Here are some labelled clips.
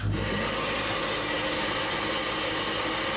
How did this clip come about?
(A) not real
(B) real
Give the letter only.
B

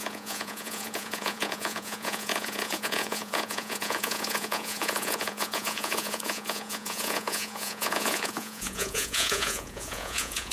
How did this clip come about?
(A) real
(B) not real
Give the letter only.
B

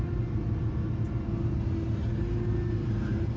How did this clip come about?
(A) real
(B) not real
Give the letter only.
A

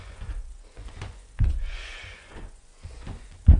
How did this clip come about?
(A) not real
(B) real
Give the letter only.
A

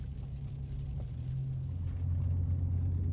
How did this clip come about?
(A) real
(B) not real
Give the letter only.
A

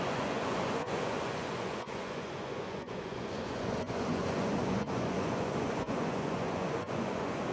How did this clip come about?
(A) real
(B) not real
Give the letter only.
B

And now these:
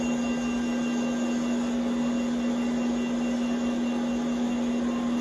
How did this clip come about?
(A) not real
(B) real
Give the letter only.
B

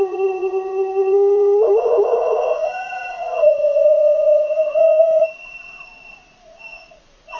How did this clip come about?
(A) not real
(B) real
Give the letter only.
A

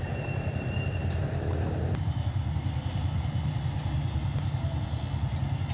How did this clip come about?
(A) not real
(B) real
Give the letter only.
B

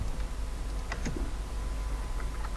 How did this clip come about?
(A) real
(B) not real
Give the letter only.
A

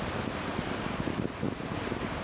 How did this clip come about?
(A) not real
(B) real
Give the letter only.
B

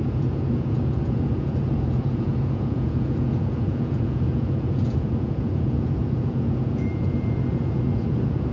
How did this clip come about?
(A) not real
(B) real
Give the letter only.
A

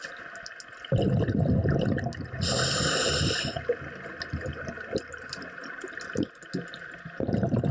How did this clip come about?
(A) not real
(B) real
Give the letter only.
B